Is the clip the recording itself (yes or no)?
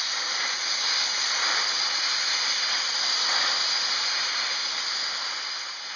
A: yes